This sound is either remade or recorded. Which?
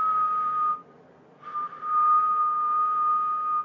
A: recorded